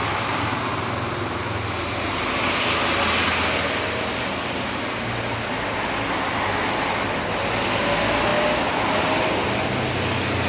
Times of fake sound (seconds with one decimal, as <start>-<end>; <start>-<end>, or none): none